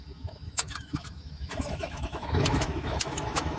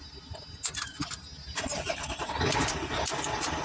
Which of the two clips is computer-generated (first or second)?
first